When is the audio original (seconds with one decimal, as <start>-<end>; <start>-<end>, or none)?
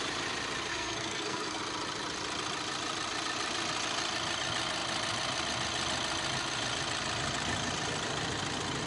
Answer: 0.0-0.7; 1.6-8.9